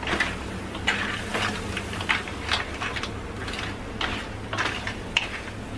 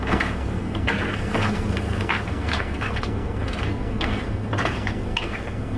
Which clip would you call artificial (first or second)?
second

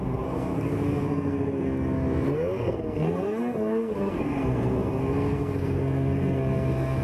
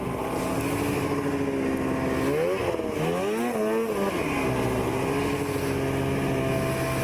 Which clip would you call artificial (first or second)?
first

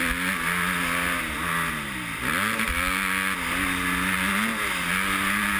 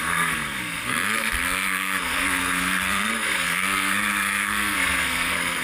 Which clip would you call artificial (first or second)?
second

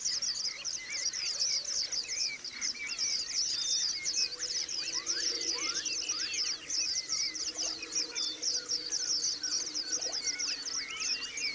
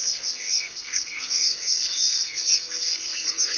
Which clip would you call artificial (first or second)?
second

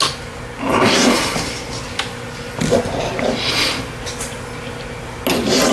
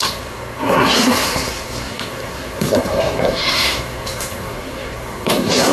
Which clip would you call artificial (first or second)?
second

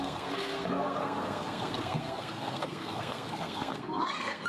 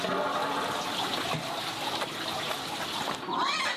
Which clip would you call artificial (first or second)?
first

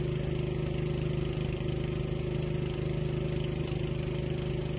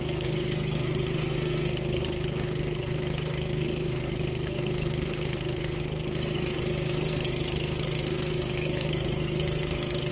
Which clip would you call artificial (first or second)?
second